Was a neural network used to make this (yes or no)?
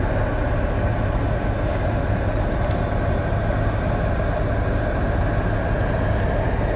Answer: no